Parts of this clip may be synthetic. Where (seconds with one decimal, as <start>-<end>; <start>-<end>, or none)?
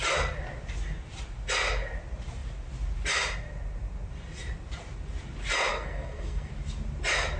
5.7-6.5